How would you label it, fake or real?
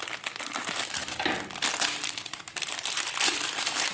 real